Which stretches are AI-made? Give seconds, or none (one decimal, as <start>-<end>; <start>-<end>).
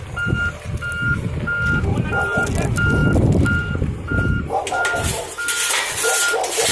none